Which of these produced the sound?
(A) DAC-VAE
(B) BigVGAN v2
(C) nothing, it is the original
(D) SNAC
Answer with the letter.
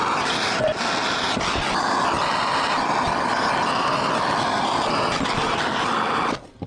C